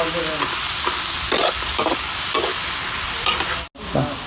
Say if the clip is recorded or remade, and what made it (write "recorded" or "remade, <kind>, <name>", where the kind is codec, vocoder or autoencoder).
recorded